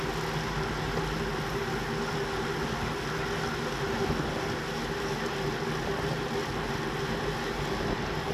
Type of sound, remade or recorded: recorded